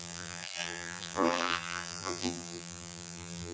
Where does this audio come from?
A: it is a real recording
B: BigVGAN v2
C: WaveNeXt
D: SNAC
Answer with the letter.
B